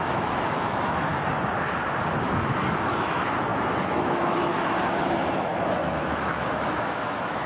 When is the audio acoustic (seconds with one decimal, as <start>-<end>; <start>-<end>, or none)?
1.1-2.1; 4.5-5.0